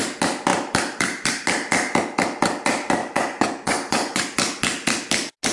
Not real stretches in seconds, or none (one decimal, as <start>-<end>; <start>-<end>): 3.0-4.2